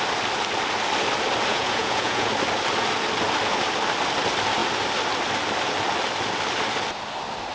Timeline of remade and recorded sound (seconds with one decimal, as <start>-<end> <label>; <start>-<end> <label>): 0.0-1.5 recorded; 1.5-2.3 remade; 2.3-7.5 recorded